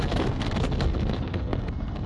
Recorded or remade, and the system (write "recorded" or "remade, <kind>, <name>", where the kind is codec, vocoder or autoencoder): remade, codec, SNAC